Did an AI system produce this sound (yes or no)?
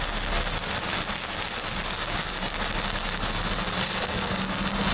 no